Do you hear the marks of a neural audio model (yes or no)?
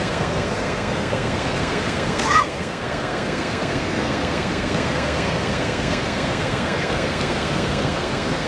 yes